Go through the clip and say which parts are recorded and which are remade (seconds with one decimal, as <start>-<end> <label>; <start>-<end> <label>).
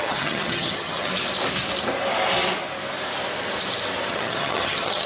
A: 0.0-1.1 remade; 1.1-4.1 recorded; 4.1-5.0 remade